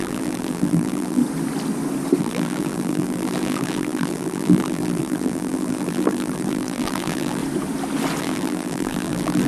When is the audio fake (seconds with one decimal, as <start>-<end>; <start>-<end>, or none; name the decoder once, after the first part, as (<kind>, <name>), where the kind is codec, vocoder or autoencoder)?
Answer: 0.0-1.2 (vocoder, BigVGAN v2); 2.2-7.4; 8.2-9.5